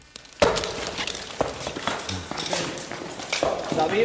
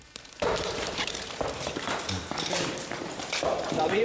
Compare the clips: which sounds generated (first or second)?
second